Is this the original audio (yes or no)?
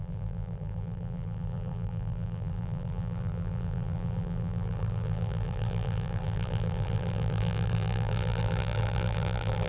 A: no